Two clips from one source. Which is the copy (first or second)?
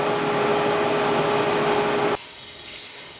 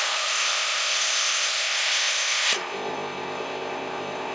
second